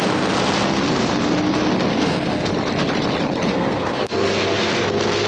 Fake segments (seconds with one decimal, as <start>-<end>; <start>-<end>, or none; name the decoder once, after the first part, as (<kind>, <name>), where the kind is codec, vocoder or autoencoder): 1.9-2.5 (codec, SNAC); 3.5-4.7